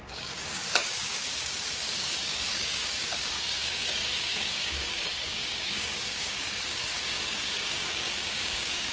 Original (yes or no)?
no